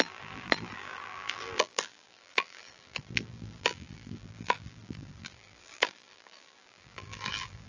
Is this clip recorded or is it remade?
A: remade